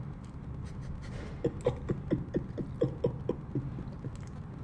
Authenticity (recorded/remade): recorded